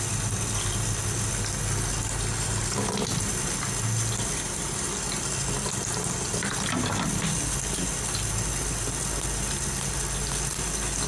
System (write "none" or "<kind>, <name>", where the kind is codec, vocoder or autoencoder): none